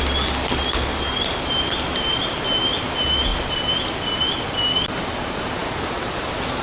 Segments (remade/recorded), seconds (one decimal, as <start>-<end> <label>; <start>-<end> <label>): 0.0-0.9 recorded; 0.9-2.2 remade; 2.2-6.6 recorded